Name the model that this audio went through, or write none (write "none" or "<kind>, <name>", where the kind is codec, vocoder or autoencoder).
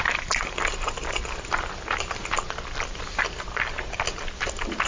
none